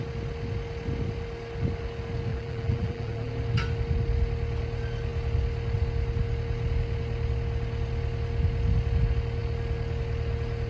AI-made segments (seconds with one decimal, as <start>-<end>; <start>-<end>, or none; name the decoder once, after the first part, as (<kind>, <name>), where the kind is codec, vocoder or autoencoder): 2.3-3.3 (vocoder, BigVGAN v2)